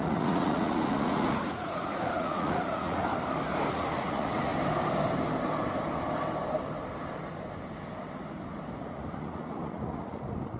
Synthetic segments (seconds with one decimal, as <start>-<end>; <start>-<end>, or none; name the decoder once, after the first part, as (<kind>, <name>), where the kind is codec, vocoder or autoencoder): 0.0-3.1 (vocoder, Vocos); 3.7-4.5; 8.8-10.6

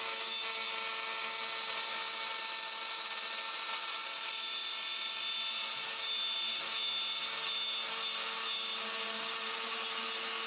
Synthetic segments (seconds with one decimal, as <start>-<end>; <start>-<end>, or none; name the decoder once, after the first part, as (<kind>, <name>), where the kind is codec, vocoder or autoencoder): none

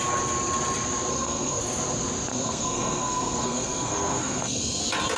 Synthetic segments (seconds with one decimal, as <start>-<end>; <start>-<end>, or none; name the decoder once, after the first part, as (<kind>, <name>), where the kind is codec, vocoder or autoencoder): 1.1-1.6 (codec, SNAC); 2.3-4.8

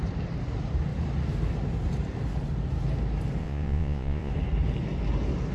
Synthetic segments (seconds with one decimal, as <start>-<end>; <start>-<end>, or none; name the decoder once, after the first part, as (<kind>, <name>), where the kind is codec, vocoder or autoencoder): 3.4-4.3 (vocoder, Vocos)